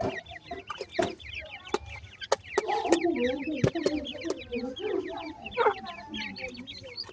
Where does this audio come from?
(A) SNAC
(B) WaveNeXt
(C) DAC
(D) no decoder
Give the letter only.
D